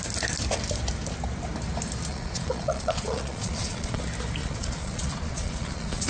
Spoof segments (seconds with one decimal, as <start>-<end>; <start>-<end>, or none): 2.1-4.0; 4.4-6.1